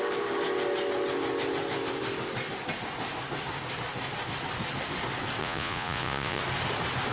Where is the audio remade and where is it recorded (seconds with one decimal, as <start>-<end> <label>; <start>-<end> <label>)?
0.0-5.4 recorded; 5.4-6.4 remade; 6.4-7.1 recorded